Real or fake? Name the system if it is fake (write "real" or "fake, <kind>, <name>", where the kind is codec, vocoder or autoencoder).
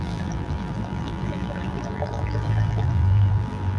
fake, vocoder, BigVGAN v2